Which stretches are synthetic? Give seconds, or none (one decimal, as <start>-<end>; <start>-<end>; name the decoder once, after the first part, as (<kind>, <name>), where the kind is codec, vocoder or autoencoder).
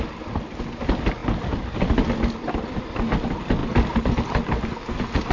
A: none